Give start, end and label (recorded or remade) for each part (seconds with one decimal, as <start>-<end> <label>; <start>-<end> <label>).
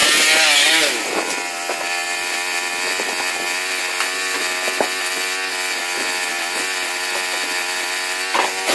0.0-8.7 recorded